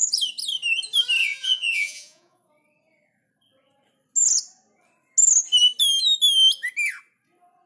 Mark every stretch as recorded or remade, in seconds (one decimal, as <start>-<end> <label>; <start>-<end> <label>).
0.0-1.2 recorded; 1.2-2.5 remade; 2.5-7.7 recorded